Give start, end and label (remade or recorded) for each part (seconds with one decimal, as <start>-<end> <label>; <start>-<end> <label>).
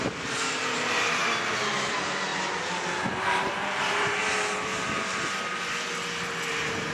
0.0-2.3 remade; 2.3-3.5 recorded; 3.5-4.2 remade; 4.2-6.5 recorded; 6.5-6.9 remade